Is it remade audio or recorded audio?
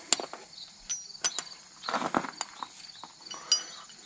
recorded